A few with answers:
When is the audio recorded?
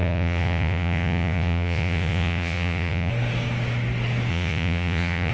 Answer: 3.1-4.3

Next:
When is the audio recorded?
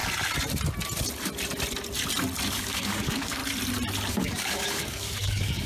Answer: 0.0-2.5; 3.4-4.1